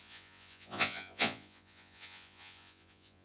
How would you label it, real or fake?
fake